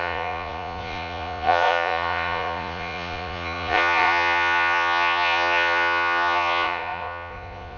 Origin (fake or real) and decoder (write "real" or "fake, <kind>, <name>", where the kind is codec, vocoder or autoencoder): fake, vocoder, Vocos